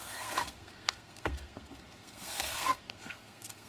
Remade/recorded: remade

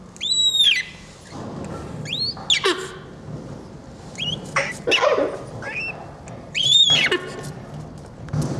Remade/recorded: recorded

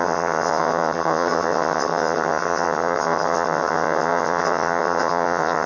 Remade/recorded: remade